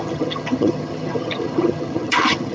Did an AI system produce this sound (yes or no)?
yes